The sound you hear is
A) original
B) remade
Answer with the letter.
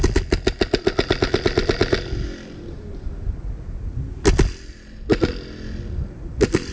A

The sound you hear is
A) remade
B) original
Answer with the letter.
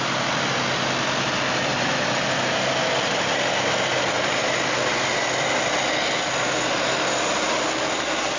B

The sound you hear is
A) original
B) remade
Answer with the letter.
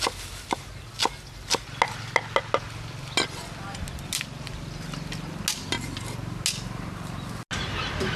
A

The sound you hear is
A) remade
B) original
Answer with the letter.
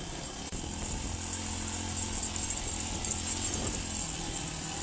B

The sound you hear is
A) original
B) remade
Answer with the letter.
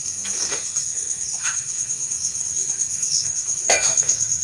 B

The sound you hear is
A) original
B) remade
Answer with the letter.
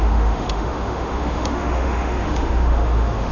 B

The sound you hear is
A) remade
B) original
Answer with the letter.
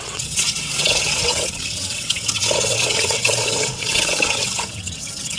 A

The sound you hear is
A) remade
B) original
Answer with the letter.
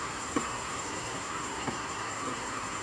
A